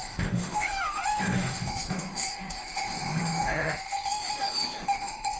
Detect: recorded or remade remade